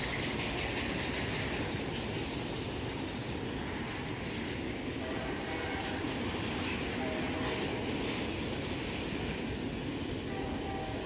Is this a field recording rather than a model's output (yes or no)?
yes